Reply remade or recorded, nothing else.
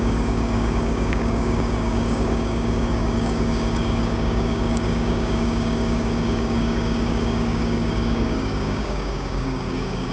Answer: remade